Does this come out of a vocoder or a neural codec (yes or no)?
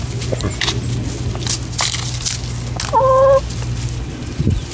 no